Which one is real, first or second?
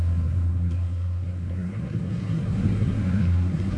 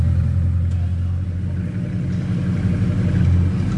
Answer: second